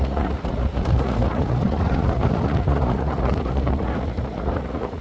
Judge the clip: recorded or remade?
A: remade